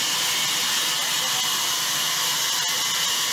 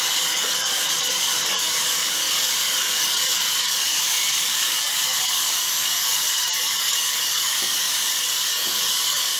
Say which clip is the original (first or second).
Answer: first